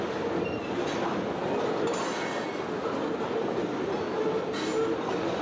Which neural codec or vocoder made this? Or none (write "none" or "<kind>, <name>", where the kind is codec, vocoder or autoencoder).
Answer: none